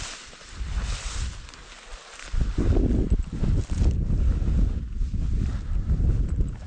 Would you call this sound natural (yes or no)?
yes